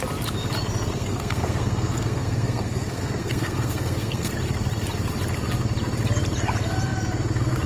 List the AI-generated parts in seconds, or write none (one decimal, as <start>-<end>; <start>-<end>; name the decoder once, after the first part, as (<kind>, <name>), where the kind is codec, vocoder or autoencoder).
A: 0.9-4.3 (codec, SNAC)